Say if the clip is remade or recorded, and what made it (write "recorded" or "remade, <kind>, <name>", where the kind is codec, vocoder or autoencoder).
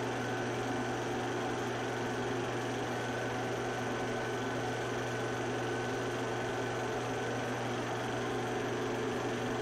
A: recorded